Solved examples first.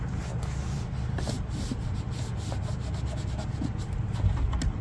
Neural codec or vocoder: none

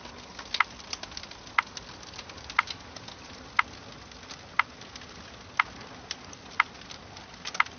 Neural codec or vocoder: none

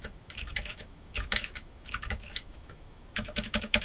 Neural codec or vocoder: autoencoder, DAC-VAE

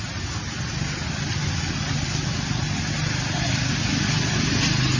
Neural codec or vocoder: none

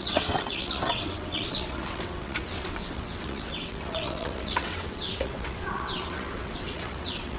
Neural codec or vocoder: vocoder, WaveNeXt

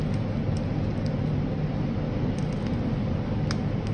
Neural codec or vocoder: none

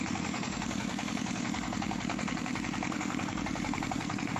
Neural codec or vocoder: codec, SNAC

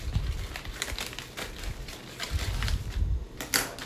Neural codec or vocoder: none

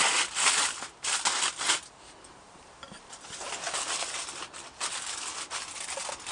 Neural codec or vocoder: none